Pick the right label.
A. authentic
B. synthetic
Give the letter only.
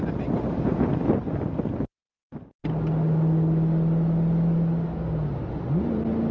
A